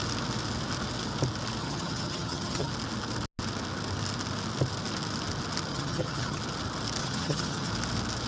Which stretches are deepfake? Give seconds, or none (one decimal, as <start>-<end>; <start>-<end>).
1.6-2.7; 5.7-6.4; 7.0-7.7